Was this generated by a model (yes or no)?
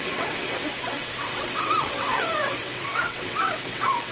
yes